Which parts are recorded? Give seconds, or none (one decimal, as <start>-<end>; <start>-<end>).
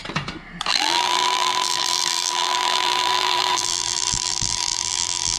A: 0.0-0.7